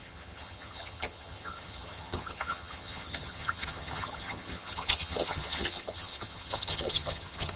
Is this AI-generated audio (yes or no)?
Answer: yes